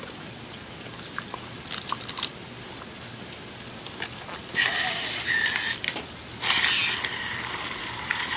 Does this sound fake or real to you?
real